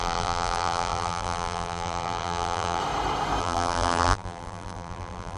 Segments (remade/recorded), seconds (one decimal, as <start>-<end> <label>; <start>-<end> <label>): 0.0-2.8 remade; 2.8-3.4 recorded; 3.4-5.4 remade